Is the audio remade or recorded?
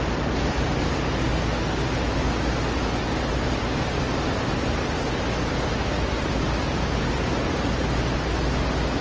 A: recorded